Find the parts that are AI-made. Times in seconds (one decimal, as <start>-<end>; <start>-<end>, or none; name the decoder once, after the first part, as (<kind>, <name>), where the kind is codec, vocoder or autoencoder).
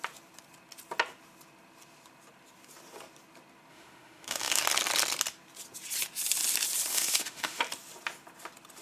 3.7-4.6 (autoencoder, DAC-VAE); 6.9-7.6